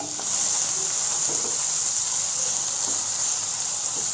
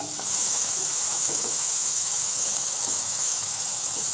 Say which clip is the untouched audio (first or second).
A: first